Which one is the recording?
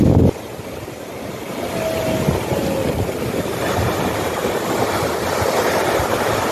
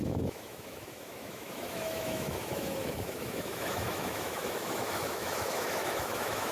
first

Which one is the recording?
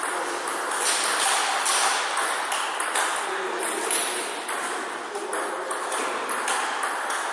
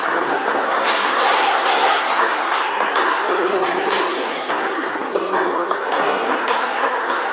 first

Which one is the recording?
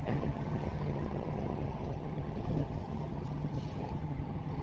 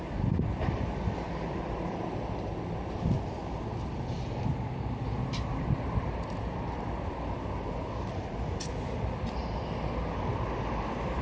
second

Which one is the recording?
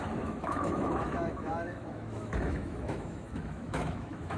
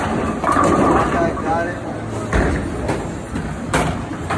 second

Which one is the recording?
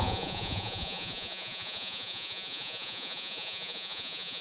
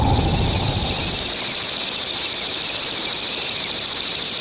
second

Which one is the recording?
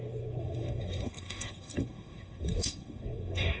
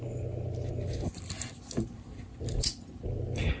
second